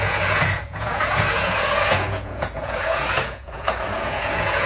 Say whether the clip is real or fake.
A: fake